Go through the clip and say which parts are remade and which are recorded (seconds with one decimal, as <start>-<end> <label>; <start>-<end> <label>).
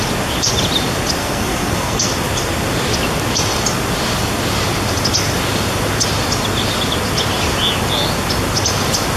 0.0-1.2 recorded; 1.2-2.1 remade; 2.1-9.2 recorded